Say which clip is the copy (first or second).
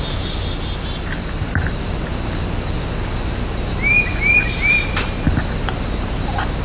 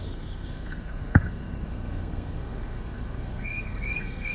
second